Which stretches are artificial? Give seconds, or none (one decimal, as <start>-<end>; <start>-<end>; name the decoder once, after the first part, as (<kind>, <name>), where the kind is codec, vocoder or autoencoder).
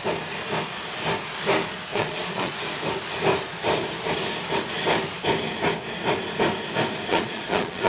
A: 1.9-2.5 (vocoder, Vocos); 7.1-7.9